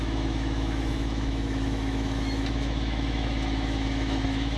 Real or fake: fake